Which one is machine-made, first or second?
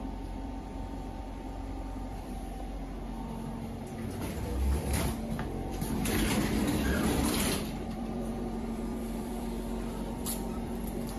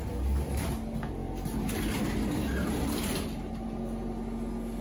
first